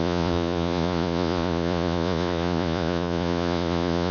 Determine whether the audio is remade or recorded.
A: remade